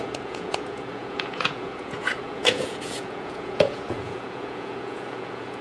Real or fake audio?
fake